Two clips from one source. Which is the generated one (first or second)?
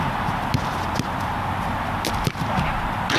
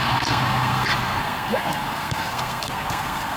second